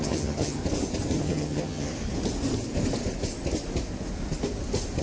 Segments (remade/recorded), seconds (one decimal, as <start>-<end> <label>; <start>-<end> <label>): 0.0-0.6 remade; 0.6-1.2 recorded; 1.2-1.9 remade; 1.9-5.0 recorded